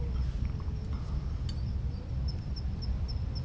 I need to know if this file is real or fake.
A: real